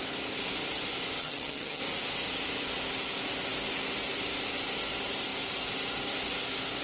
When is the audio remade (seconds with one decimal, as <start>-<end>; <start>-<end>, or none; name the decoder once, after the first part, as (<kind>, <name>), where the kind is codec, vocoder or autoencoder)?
1.2-1.8 (vocoder, HiFi-GAN)